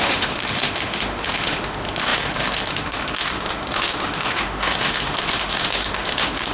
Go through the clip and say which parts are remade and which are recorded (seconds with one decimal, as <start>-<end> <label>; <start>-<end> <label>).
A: 0.0-6.5 remade

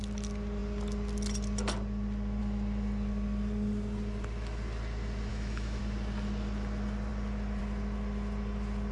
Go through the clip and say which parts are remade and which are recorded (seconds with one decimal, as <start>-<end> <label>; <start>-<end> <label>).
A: 0.0-5.3 recorded; 5.3-5.8 remade; 5.8-8.9 recorded

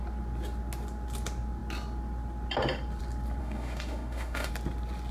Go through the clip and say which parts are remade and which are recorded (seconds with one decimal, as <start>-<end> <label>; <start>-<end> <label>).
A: 0.0-3.4 recorded; 3.4-4.5 remade; 4.5-5.1 recorded

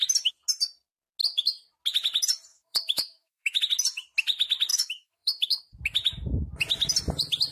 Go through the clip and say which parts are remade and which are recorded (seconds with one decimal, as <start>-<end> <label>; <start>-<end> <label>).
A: 0.0-2.5 recorded; 2.5-3.6 remade; 3.6-4.7 recorded; 4.7-5.6 remade; 5.6-7.5 recorded

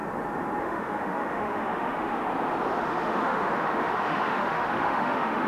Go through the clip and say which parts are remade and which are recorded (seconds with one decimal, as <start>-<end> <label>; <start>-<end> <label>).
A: 0.0-0.6 recorded; 0.6-2.2 remade; 2.2-2.8 recorded; 2.8-5.5 remade

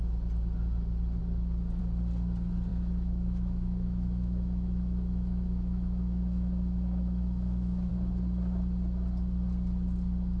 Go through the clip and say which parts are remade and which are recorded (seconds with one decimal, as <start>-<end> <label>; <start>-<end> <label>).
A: 0.0-2.7 recorded; 2.7-7.9 remade; 7.9-10.4 recorded